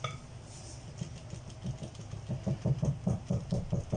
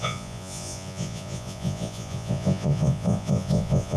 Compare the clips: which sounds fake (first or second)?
second